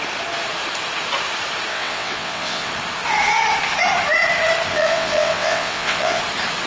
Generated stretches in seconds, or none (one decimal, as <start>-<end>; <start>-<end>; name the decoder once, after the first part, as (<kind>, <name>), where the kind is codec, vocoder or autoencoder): 1.7-2.7 (vocoder, WaveNeXt); 4.7-6.2